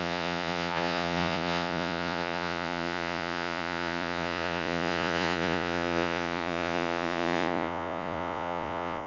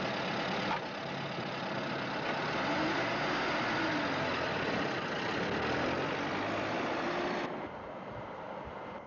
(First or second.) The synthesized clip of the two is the first